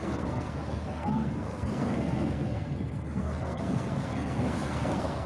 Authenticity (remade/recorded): remade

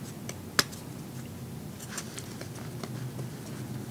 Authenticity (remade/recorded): recorded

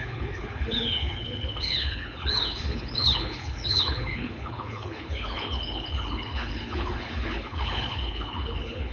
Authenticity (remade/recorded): remade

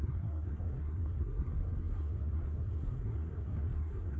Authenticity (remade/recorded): remade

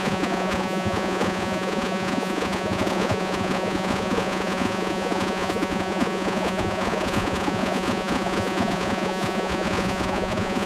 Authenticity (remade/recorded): remade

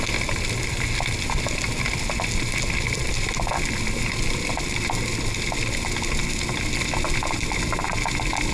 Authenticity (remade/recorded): recorded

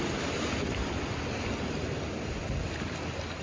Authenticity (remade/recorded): recorded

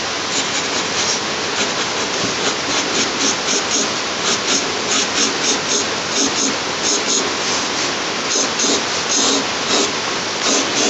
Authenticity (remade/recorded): recorded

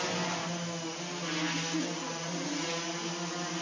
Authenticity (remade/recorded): recorded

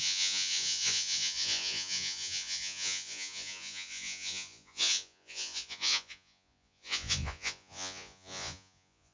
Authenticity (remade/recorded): remade